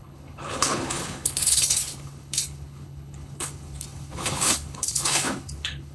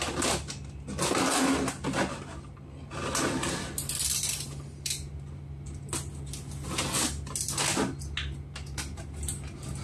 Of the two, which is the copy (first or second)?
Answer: first